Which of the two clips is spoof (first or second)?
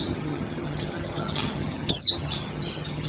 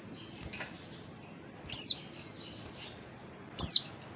first